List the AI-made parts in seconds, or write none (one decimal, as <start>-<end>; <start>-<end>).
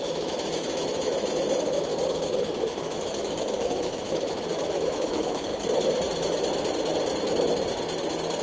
0.0-1.9; 2.4-5.5